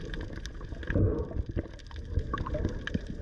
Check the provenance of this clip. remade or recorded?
recorded